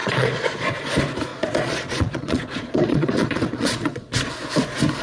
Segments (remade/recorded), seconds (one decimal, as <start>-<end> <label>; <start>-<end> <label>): 0.0-0.7 remade; 0.7-1.3 recorded; 1.3-4.3 remade; 4.3-5.0 recorded